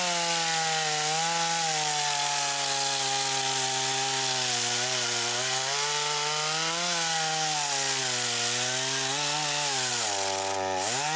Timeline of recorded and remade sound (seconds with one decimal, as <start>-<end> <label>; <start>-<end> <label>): 0.0-11.2 recorded